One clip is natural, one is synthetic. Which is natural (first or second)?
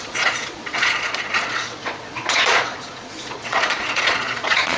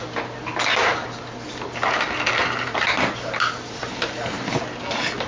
second